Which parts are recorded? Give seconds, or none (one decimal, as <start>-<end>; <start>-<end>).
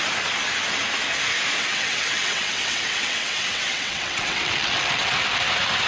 0.0-1.7; 5.2-5.9